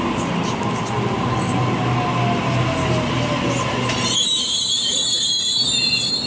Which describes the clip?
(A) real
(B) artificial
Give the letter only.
A